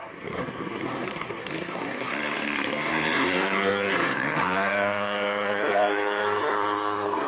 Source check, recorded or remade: remade